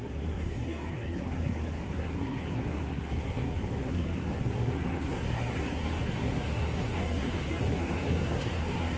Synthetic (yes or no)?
yes